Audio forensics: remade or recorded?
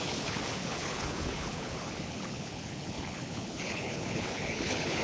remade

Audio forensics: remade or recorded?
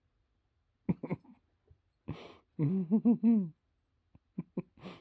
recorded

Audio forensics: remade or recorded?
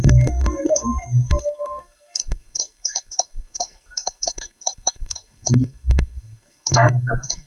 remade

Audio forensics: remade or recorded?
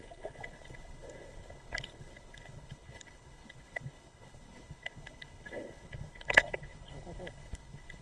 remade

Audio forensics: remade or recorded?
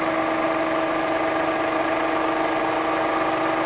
recorded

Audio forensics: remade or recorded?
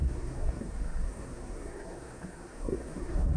remade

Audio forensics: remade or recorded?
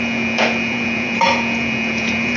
remade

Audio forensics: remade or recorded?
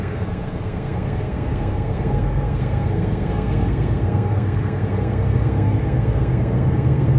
remade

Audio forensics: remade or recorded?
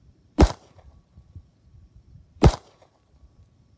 remade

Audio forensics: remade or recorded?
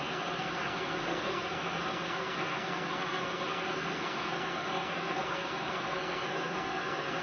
remade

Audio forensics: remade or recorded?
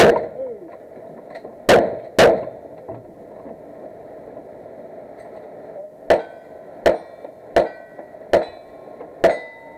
recorded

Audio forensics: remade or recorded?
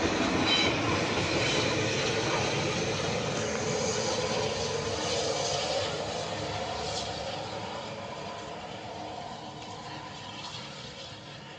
recorded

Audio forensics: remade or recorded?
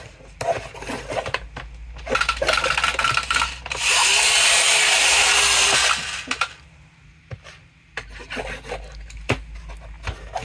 recorded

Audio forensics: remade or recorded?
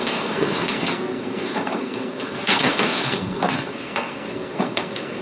remade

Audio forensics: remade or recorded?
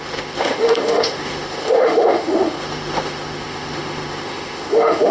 remade